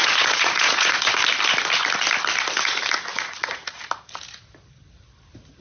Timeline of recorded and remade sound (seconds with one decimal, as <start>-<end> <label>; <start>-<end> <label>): 0.0-1.1 remade; 1.1-3.1 recorded; 3.1-3.8 remade; 3.8-5.6 recorded

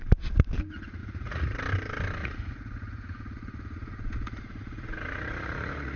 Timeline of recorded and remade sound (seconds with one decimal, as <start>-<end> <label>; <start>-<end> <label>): 0.0-1.0 recorded; 1.0-1.6 remade; 1.6-2.2 recorded; 2.2-6.0 remade

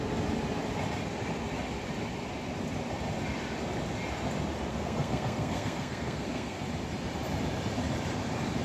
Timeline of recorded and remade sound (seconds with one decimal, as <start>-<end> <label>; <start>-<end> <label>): 0.0-4.7 recorded; 4.7-6.6 remade; 6.6-8.6 recorded

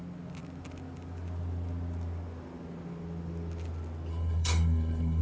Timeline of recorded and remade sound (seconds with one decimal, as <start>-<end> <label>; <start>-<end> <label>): 0.0-4.1 recorded; 4.1-5.2 remade

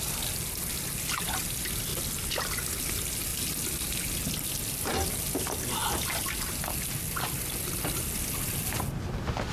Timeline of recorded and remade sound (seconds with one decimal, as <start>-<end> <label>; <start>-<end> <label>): 0.0-9.5 recorded

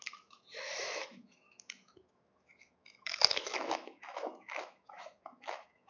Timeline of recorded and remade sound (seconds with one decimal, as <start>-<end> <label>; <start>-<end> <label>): 0.0-5.9 remade